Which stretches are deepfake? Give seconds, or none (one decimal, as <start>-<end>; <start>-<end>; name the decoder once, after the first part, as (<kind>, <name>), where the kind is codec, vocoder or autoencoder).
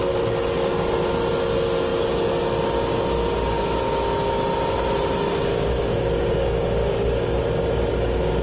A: 5.5-7.4 (codec, DAC)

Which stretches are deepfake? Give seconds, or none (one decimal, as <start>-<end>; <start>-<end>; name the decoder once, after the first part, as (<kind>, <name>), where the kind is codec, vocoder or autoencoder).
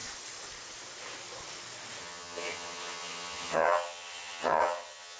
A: 2.0-5.2 (vocoder, HiFi-GAN)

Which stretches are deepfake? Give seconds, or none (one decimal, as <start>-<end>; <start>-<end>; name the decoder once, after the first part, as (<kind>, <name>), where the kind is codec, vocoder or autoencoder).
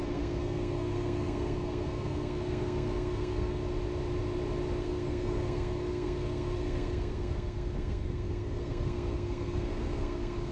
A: 0.0-3.6 (codec, SNAC); 4.8-10.5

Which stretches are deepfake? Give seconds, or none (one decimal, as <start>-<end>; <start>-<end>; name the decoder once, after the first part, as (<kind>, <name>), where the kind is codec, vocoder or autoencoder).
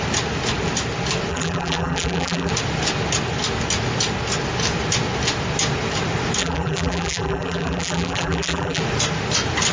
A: 1.3-2.5 (vocoder, BigVGAN v2); 6.4-8.8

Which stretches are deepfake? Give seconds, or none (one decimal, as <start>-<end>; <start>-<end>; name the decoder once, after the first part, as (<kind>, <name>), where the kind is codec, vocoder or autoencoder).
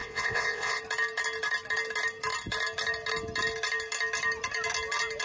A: 0.0-0.8 (vocoder, WaveNeXt)